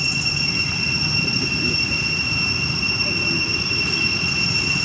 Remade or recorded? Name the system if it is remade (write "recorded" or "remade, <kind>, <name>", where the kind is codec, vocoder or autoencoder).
recorded